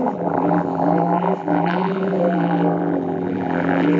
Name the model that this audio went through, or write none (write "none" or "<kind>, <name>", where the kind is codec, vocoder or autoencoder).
vocoder, BigVGAN v2